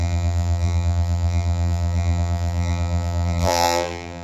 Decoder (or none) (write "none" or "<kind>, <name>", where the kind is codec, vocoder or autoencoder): vocoder, BigVGAN v2